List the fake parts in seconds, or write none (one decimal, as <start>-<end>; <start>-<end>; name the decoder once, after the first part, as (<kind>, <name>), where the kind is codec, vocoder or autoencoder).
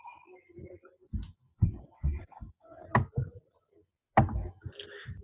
1.5-2.8 (vocoder, WaveNeXt)